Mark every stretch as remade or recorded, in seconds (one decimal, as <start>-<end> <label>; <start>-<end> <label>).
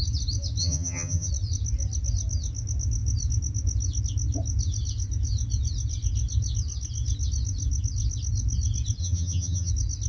0.0-0.6 recorded; 0.6-1.3 remade; 1.3-9.0 recorded; 9.0-9.7 remade; 9.7-10.1 recorded